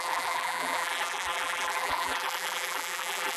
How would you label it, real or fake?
fake